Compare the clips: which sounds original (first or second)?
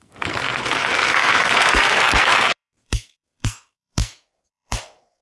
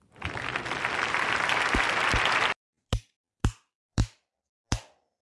second